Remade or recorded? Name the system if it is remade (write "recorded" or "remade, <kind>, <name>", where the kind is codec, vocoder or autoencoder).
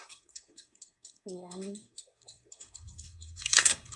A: remade, codec, SNAC